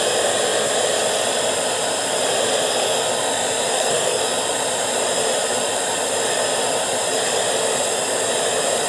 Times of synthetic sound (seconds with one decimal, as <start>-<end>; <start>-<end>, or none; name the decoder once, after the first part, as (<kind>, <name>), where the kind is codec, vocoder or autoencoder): 3.7-4.2 (codec, SNAC)